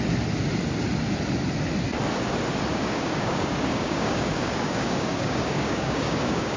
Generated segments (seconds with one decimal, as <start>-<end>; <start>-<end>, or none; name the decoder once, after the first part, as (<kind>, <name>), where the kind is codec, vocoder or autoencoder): 2.7-6.6 (codec, DAC)